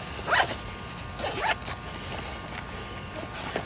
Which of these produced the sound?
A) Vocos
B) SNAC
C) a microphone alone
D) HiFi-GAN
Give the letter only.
C